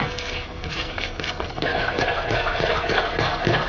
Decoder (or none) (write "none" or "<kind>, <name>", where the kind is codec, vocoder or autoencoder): codec, SNAC